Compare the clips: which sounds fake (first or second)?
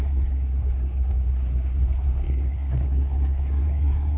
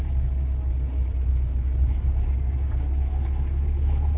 first